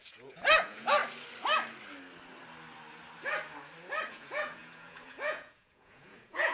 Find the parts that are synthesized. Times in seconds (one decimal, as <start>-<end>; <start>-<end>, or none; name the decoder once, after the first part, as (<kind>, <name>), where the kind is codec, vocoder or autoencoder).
0.0-1.0 (vocoder, Vocos); 4.1-6.5